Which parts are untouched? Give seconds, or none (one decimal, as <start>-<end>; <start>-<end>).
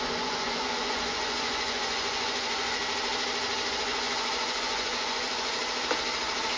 2.8-3.7; 5.6-6.6